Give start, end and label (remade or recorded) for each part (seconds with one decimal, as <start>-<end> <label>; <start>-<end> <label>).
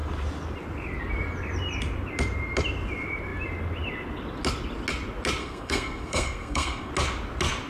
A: 0.0-5.4 recorded; 5.4-6.9 remade; 6.9-7.7 recorded